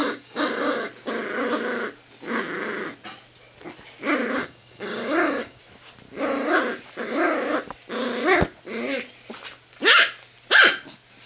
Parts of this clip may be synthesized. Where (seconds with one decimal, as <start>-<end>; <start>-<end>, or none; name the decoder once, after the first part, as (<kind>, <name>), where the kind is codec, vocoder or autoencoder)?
0.0-0.9 (codec, DAC); 4.4-5.6